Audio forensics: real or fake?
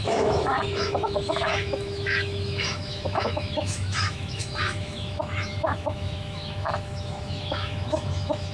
fake